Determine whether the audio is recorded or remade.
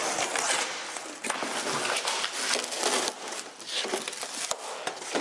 recorded